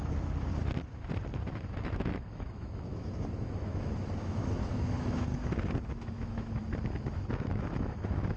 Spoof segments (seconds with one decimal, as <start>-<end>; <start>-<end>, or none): 0.0-0.5; 1.5-5.3; 5.9-6.6; 7.1-8.4